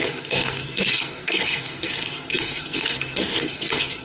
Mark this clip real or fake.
fake